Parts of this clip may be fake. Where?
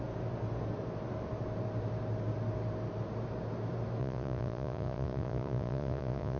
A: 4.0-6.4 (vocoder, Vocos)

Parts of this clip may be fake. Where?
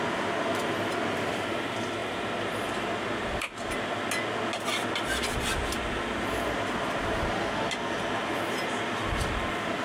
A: none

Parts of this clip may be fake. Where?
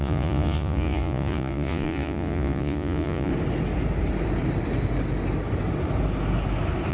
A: 0.0-3.3 (vocoder, Vocos)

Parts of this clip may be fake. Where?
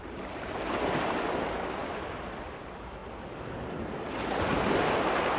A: none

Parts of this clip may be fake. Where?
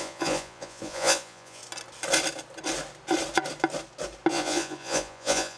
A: 0.0-1.6 (vocoder, Vocos); 4.3-5.6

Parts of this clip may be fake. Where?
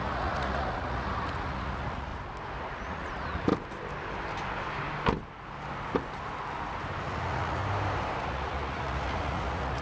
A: 0.0-2.1 (vocoder, Vocos); 2.6-3.5; 7.0-7.6; 8.2-9.8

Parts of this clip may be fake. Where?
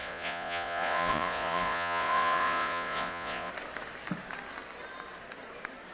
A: 0.0-3.5 (vocoder, Vocos)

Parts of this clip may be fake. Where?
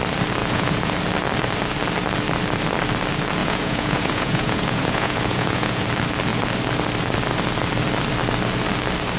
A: 0.4-0.9 (vocoder, Vocos); 3.4-5.8